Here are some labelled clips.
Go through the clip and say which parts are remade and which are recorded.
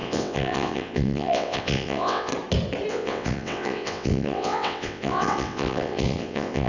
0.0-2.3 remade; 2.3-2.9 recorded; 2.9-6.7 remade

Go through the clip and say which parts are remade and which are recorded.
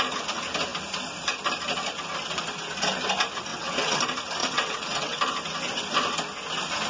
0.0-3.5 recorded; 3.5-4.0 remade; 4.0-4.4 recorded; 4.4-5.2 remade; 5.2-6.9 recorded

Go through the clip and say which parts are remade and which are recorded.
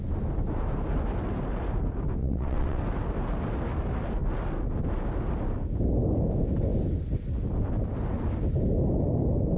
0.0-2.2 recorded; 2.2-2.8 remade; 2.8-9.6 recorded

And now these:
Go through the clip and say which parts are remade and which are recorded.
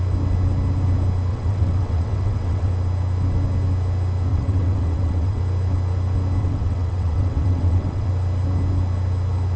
0.0-1.3 recorded; 1.3-2.7 remade; 2.7-4.3 recorded; 4.3-5.4 remade; 5.4-6.4 recorded; 6.4-8.1 remade; 8.1-9.6 recorded